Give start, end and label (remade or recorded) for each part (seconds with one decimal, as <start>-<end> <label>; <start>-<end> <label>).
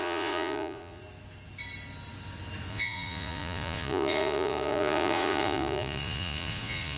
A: 0.0-1.0 remade; 1.0-2.7 recorded; 2.7-7.0 remade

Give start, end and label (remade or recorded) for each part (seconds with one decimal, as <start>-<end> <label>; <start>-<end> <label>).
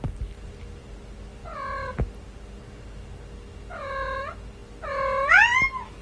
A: 0.0-6.0 recorded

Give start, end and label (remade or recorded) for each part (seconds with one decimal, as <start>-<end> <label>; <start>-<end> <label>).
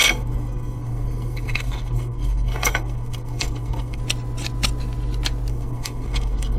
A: 0.0-4.0 remade; 4.0-5.5 recorded; 5.5-6.6 remade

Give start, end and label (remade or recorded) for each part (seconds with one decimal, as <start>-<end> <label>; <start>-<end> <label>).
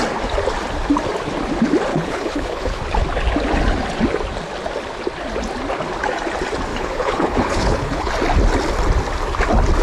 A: 0.0-1.9 recorded; 1.9-2.8 remade; 2.8-6.7 recorded; 6.7-8.1 remade; 8.1-9.8 recorded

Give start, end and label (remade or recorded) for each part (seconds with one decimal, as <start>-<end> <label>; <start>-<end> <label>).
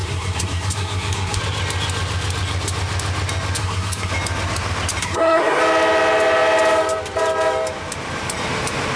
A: 0.0-1.4 remade; 1.4-3.6 recorded; 3.6-4.1 remade; 4.1-5.0 recorded; 5.0-5.6 remade; 5.6-9.0 recorded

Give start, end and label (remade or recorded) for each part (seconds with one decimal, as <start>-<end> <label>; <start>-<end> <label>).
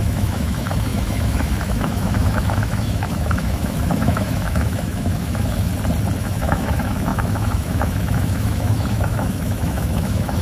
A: 0.0-5.7 remade; 5.7-6.2 recorded; 6.2-10.4 remade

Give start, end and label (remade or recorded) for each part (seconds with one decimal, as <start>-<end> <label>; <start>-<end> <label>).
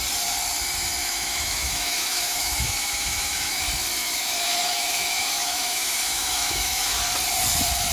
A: 0.0-1.0 recorded; 1.0-3.6 remade; 3.6-4.0 recorded; 4.0-7.0 remade; 7.0-7.9 recorded